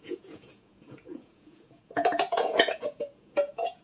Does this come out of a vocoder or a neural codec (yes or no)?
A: yes